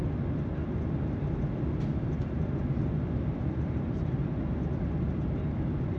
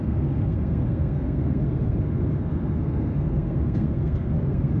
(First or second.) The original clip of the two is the first